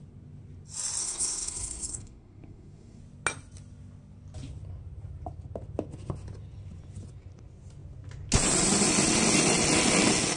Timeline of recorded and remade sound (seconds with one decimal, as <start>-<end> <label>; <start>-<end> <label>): 0.0-1.0 recorded; 1.0-3.0 remade; 3.0-10.4 recorded